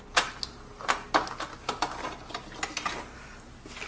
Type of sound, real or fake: real